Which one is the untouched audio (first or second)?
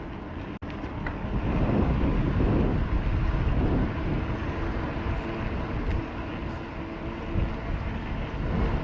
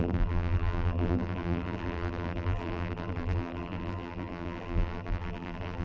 first